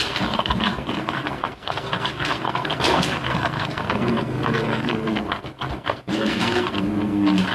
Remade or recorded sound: remade